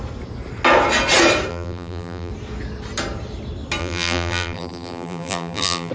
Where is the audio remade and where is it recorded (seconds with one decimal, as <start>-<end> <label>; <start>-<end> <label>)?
0.0-1.5 recorded; 1.5-2.3 remade; 2.3-3.8 recorded; 3.8-5.9 remade